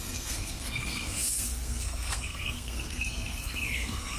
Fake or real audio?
fake